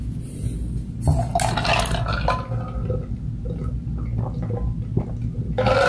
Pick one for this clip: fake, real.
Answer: real